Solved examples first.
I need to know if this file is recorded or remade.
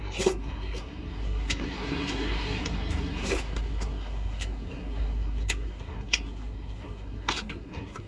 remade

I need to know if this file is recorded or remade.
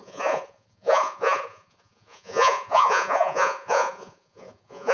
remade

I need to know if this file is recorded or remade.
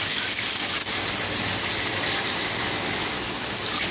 recorded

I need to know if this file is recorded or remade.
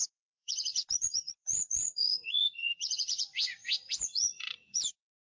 remade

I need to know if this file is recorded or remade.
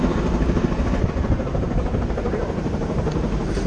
remade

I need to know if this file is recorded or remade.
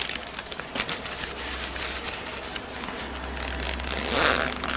recorded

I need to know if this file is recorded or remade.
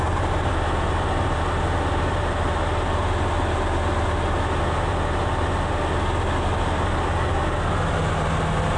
recorded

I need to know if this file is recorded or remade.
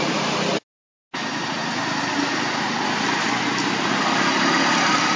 recorded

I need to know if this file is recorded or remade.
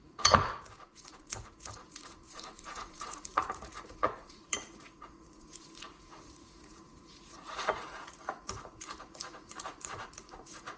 remade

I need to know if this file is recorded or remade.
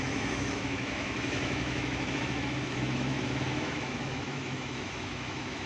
remade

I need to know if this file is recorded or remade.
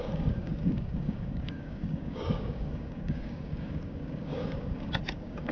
remade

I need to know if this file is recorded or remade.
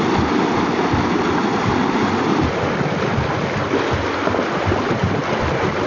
recorded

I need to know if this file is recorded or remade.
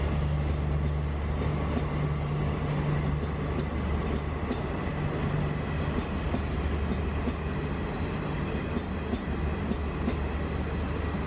recorded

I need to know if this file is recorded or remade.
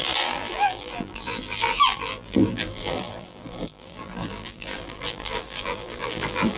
remade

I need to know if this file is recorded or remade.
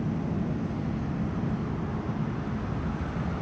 recorded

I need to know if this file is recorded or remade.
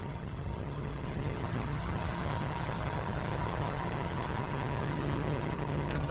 remade